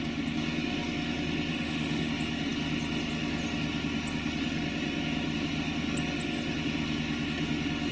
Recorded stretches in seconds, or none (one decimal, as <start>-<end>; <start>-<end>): 0.0-1.5; 2.1-7.9